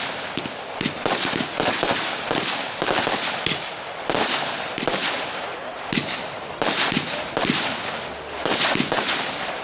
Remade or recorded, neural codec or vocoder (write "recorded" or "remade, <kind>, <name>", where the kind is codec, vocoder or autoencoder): recorded